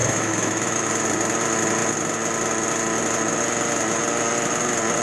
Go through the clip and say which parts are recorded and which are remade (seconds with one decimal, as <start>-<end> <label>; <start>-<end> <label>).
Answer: 0.0-0.9 remade; 0.9-5.0 recorded